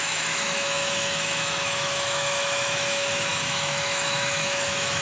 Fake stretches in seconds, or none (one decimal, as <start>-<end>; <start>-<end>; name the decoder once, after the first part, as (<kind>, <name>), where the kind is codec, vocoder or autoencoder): 0.0-5.0 (autoencoder, DAC-VAE)

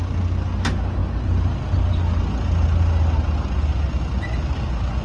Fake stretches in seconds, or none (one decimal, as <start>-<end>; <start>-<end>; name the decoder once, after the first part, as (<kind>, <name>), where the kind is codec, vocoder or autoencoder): none

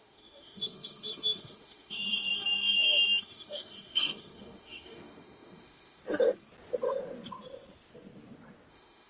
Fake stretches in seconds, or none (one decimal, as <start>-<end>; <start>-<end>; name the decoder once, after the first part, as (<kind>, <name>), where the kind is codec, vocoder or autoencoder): 0.0-6.0 (autoencoder, DAC-VAE); 8.7-9.1

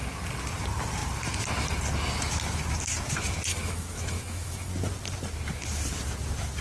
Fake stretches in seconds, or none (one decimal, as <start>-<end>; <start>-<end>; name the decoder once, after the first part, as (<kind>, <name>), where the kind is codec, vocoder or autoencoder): 3.5-4.7 (autoencoder, DAC-VAE)